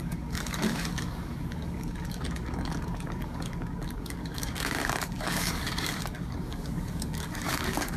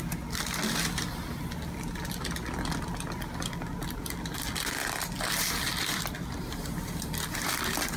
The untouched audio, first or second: second